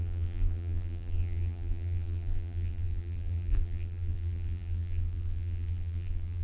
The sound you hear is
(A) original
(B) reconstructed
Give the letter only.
B